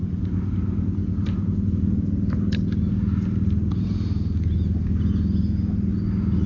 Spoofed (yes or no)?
no